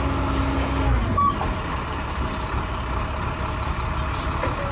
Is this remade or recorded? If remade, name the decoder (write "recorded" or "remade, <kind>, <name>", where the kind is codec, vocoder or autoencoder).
recorded